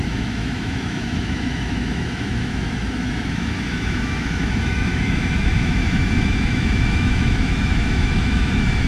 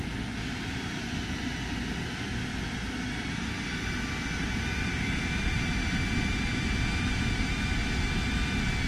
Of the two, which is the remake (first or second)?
first